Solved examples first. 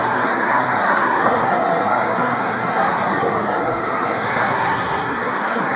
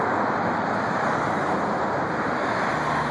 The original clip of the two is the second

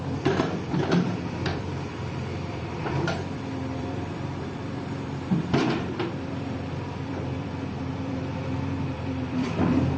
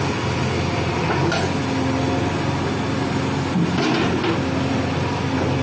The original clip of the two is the second